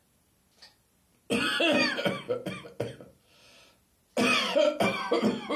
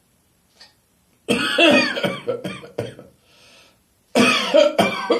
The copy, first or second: second